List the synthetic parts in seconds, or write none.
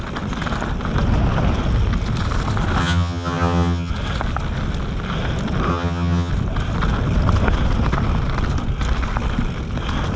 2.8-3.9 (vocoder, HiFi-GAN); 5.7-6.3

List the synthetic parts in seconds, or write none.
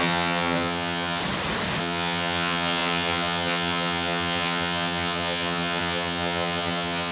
0.0-1.2 (vocoder, HiFi-GAN); 1.8-7.1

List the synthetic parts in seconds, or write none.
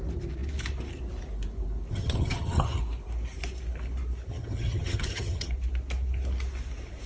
1.9-2.8 (vocoder, HiFi-GAN); 4.3-5.5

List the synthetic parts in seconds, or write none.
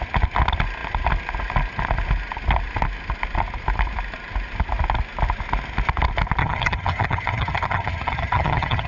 6.4-8.9 (vocoder, HiFi-GAN)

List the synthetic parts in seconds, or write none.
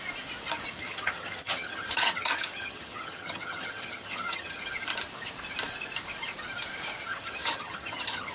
0.8-4.6 (vocoder, HiFi-GAN); 7.1-8.3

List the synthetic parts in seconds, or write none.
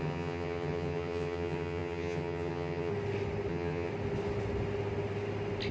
0.0-2.9 (vocoder, HiFi-GAN); 3.5-3.9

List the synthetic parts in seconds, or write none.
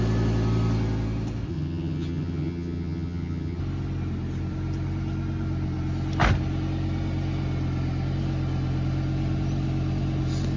1.5-3.6 (vocoder, HiFi-GAN)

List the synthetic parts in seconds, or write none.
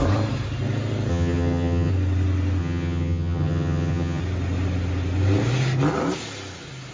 1.1-1.9 (vocoder, HiFi-GAN); 2.6-4.2